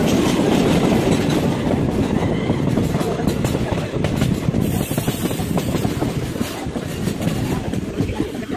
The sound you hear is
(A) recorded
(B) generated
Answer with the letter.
A